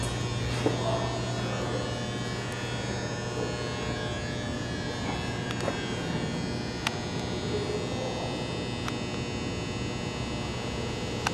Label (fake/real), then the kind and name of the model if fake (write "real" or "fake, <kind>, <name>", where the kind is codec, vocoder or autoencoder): real